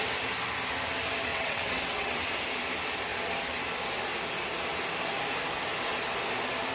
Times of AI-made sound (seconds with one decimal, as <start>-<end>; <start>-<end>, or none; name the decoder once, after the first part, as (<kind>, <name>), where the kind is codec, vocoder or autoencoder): 1.3-2.2 (vocoder, WaveNeXt)